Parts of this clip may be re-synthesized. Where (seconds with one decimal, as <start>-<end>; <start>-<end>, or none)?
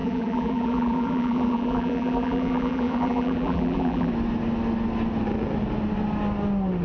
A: 0.0-4.1